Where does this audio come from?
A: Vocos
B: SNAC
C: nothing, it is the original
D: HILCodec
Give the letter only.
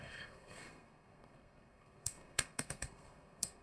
B